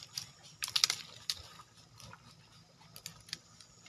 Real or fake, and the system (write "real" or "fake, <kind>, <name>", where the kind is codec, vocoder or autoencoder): real